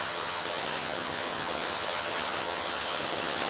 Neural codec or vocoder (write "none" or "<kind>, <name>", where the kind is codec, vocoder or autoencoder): vocoder, HiFi-GAN